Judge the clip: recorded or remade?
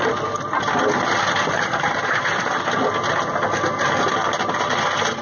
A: recorded